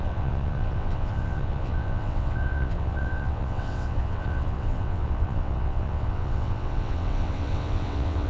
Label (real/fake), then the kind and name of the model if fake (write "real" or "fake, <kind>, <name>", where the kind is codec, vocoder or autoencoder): fake, vocoder, WaveNeXt